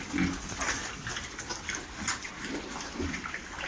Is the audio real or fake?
real